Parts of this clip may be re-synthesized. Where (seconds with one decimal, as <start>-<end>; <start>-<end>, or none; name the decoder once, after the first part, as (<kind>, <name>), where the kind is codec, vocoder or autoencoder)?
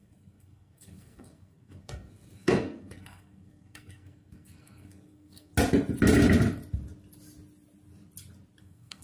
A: 0.0-5.5 (codec, SNAC); 8.6-9.0